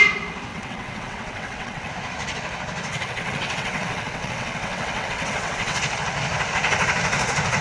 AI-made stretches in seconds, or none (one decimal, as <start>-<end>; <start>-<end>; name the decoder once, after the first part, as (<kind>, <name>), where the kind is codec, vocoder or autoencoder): 0.5-1.9 (vocoder, WaveNeXt); 2.9-5.8